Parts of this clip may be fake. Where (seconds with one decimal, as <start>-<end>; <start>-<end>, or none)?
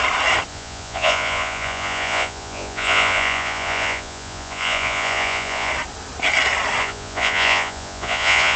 0.5-5.7; 6.8-8.6